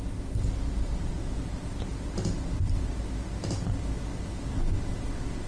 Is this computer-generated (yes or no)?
no